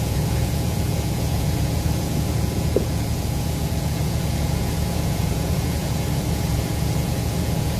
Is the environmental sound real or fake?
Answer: fake